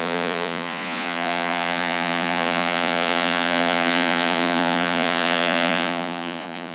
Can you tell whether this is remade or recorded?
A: remade